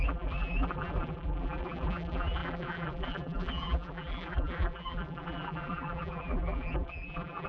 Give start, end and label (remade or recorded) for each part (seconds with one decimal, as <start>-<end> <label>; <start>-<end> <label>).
0.0-7.5 remade